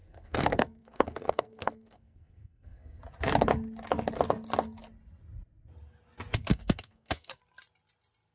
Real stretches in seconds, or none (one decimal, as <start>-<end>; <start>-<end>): 3.0-6.5; 7.4-8.3